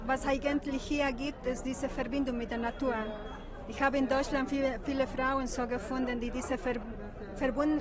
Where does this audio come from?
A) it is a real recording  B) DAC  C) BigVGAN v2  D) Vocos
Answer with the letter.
A